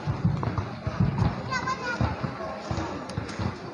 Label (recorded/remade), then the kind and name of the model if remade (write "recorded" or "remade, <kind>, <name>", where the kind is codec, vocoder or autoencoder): recorded